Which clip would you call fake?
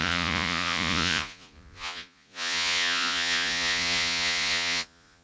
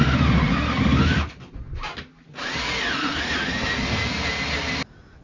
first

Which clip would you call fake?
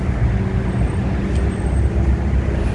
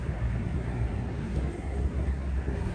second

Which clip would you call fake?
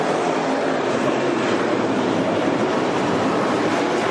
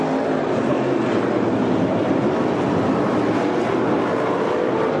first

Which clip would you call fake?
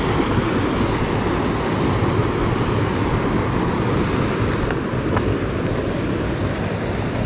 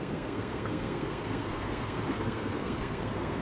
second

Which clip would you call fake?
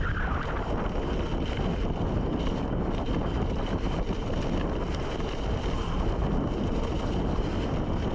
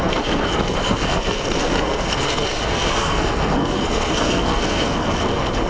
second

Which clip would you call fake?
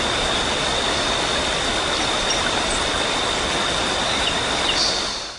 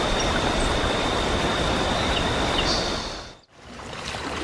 second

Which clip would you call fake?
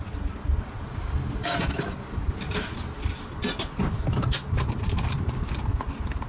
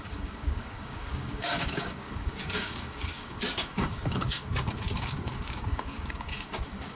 second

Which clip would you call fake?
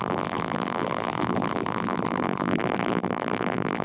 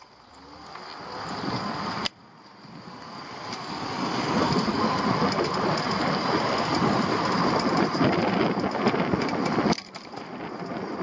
first